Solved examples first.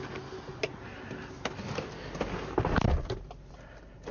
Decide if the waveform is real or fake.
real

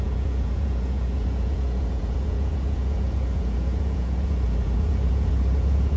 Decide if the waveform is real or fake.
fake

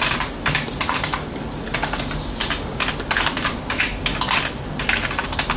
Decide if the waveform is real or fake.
real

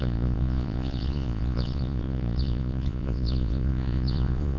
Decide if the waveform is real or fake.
fake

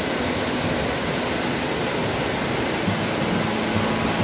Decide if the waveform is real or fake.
real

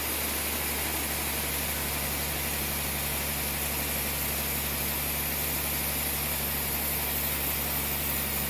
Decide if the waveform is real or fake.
real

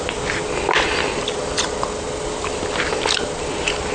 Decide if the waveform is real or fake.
real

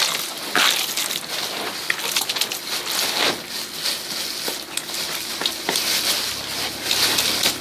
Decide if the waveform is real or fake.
real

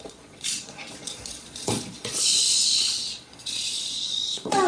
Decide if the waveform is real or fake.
fake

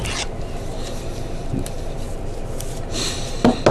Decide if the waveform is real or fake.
real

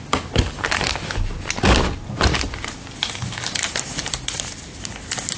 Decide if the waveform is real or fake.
real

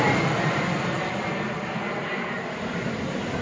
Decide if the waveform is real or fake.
real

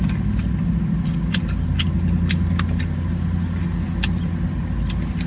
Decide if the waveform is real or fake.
real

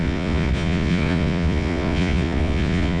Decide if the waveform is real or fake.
fake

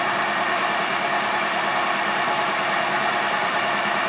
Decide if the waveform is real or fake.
real